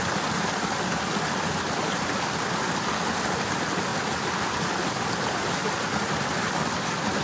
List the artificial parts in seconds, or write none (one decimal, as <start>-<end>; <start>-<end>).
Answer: none